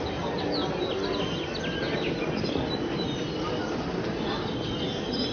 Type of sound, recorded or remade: recorded